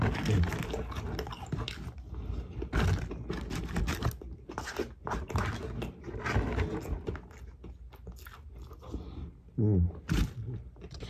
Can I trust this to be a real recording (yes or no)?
yes